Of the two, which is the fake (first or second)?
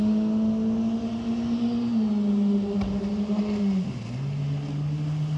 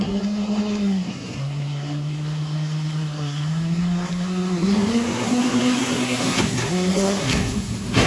second